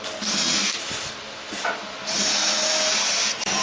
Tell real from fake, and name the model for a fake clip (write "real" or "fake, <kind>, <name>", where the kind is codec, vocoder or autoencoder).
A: real